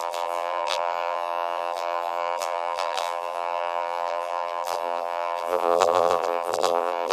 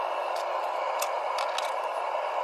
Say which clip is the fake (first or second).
first